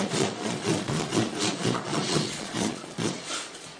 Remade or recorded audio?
remade